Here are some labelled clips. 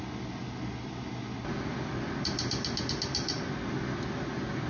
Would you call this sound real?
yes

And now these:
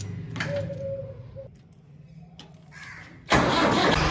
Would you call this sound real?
yes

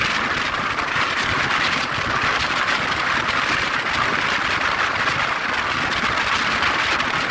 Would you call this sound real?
yes